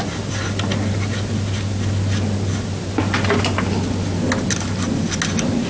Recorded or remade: recorded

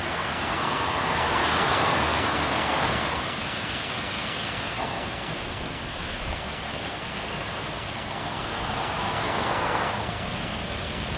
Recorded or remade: remade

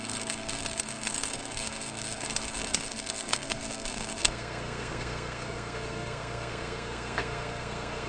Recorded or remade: remade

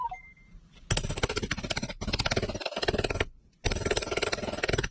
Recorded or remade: recorded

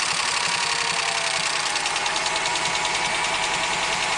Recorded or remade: recorded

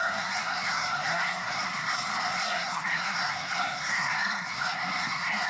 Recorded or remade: remade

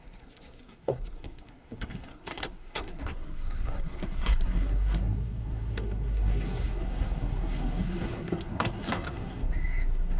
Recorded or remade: remade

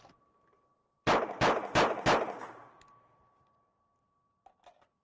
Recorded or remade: recorded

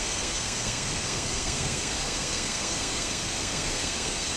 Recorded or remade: remade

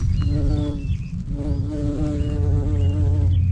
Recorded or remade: recorded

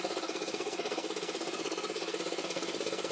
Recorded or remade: remade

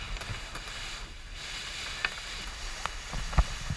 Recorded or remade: recorded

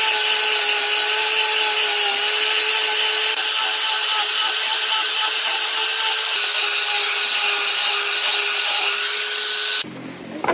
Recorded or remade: recorded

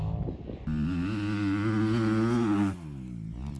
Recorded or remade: recorded